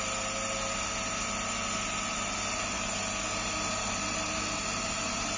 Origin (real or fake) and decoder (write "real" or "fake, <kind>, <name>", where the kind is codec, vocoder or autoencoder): real